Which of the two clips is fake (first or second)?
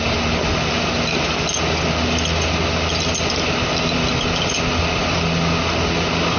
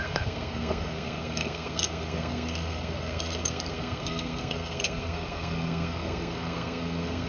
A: second